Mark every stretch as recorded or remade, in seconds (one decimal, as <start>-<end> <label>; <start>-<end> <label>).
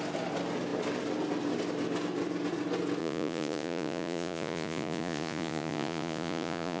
0.0-3.0 recorded; 3.0-6.8 remade